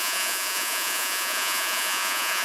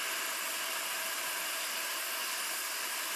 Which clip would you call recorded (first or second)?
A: second